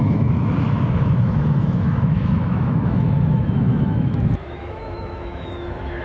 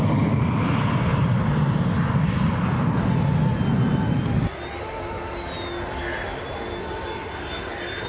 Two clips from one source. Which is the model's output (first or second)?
first